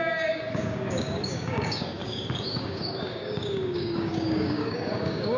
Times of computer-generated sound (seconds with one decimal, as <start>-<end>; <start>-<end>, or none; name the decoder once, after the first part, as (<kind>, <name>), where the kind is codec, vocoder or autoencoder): 0.0-5.4 (codec, DAC)